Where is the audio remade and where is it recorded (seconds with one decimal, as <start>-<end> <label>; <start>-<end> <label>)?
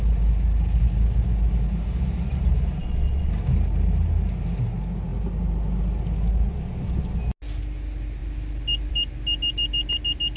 0.0-2.8 recorded; 2.8-3.3 remade; 3.3-10.4 recorded